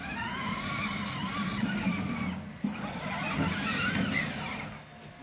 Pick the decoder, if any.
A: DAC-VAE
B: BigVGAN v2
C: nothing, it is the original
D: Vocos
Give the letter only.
C